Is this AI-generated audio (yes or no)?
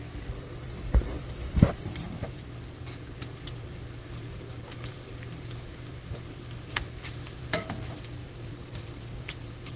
yes